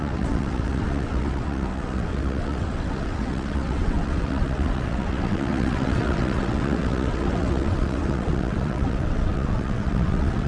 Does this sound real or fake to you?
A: fake